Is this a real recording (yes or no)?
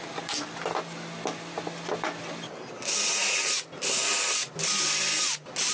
yes